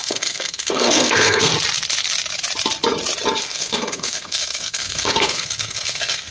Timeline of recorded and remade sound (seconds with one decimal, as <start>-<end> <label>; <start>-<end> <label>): 0.0-1.5 remade; 1.5-3.4 recorded; 3.4-6.3 remade

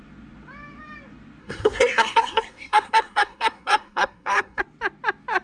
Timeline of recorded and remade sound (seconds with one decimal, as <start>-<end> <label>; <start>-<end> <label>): 0.0-1.4 recorded; 1.4-4.6 remade; 4.6-5.4 recorded

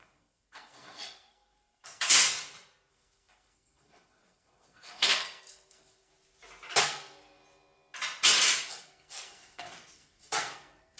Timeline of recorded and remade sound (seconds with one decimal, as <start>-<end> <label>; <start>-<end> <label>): 0.0-2.3 remade; 2.3-2.9 recorded; 2.9-6.1 remade; 6.1-6.8 recorded; 6.8-7.4 remade; 7.4-8.7 recorded; 8.7-11.0 remade